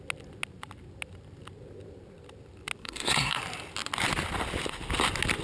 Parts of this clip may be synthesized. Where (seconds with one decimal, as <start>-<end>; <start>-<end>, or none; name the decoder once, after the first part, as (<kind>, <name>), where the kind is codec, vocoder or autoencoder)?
2.8-3.4 (codec, SNAC)